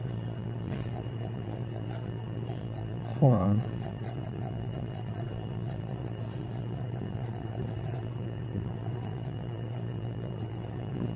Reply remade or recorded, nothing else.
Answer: remade